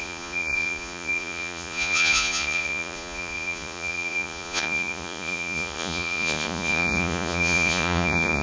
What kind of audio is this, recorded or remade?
remade